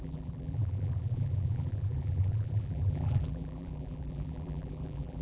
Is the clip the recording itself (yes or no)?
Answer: no